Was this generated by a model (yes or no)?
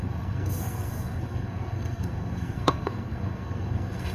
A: yes